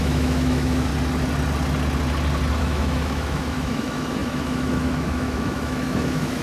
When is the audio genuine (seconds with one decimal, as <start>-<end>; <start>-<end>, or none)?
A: 0.9-2.6